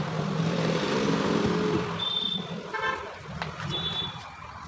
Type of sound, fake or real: fake